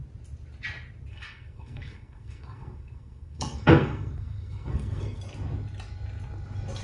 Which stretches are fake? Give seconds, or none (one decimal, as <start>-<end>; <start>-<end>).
1.1-5.2